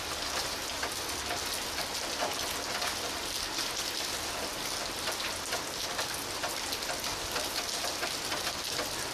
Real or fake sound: real